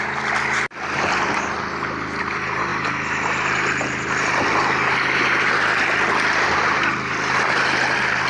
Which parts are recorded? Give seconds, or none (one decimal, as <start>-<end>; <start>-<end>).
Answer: 0.0-8.3